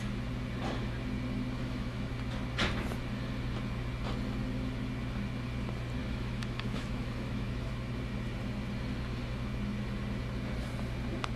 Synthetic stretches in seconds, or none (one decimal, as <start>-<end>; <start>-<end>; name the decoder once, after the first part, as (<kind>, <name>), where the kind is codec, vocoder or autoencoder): 1.6-2.1 (autoencoder, DAC-VAE); 6.0-7.7